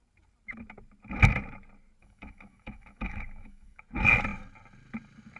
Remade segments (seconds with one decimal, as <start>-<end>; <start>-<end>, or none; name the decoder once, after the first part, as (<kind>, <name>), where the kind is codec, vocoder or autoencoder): 2.0-3.8 (autoencoder, DAC-VAE)